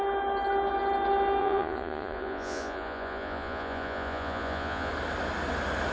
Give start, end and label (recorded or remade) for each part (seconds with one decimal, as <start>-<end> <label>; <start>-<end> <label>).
0.0-1.4 recorded; 1.4-4.9 remade; 4.9-5.9 recorded